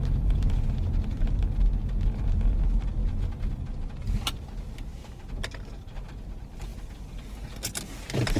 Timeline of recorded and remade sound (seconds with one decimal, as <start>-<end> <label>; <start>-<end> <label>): 0.0-8.4 recorded